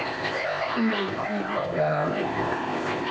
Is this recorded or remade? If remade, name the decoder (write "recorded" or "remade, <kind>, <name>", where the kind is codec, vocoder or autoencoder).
remade, codec, ZipCodec